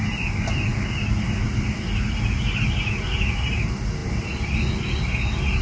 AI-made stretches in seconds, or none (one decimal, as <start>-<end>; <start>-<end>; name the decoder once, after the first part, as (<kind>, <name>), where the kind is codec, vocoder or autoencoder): none